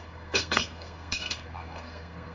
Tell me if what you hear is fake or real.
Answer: fake